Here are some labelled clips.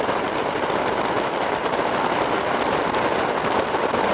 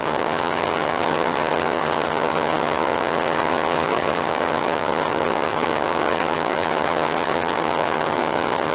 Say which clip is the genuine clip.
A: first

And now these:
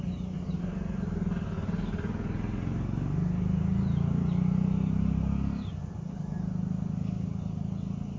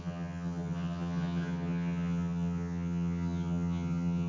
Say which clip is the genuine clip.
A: first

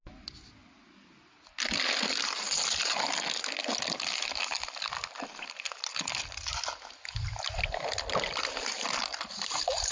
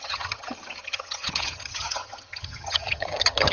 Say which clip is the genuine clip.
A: first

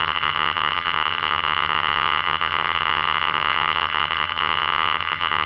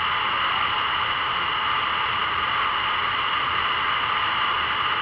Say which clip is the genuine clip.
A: second